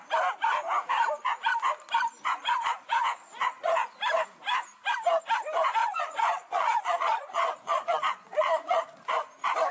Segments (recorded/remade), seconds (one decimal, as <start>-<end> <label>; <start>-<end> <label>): 0.0-2.3 recorded; 2.3-3.7 remade; 3.7-5.8 recorded; 5.8-8.8 remade; 8.8-9.7 recorded